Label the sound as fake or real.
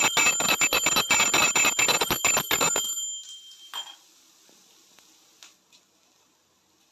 real